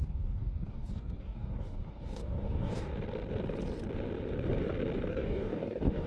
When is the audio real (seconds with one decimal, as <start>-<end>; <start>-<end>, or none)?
2.9-5.1